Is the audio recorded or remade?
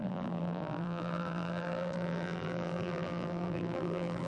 remade